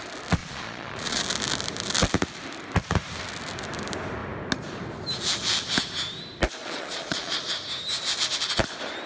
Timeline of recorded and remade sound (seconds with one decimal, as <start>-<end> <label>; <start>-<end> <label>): 0.0-0.4 recorded; 0.4-1.2 remade; 1.2-6.6 recorded; 6.6-7.5 remade; 7.5-9.1 recorded